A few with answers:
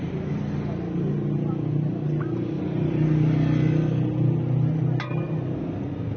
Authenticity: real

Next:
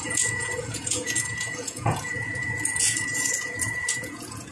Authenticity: fake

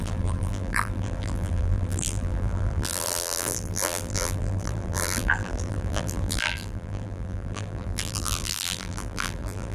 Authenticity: fake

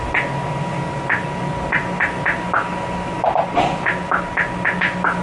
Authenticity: real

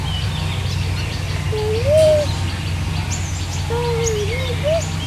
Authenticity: real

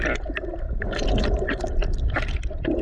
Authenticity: real